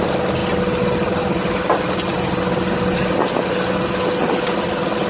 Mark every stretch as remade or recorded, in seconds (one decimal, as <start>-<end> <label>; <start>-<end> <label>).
0.0-5.1 recorded